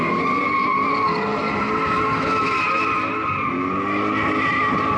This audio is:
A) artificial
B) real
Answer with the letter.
B